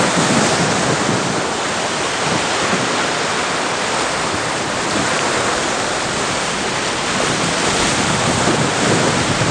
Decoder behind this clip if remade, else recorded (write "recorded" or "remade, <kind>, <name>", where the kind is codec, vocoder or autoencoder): recorded